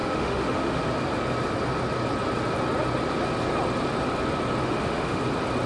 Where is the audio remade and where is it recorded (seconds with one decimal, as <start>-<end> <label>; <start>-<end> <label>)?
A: 0.0-0.8 remade; 0.8-4.6 recorded; 4.6-5.2 remade; 5.2-5.7 recorded